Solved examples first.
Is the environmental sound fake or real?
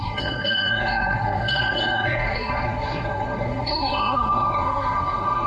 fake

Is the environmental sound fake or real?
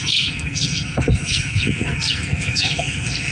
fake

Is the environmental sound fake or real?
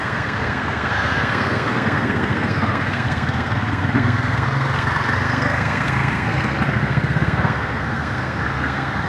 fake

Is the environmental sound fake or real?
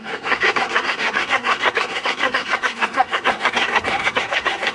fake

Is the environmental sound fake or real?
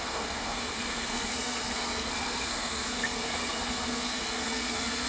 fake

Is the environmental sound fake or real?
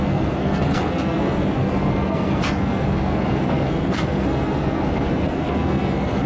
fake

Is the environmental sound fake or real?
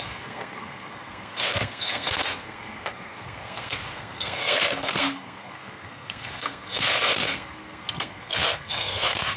fake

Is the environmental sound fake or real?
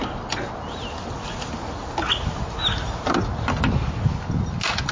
real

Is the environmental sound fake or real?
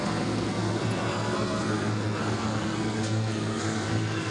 fake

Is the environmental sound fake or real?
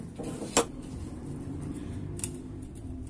real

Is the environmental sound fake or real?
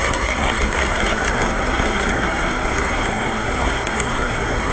fake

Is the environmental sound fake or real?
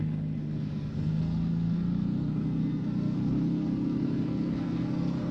fake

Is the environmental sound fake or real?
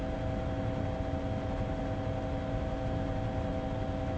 real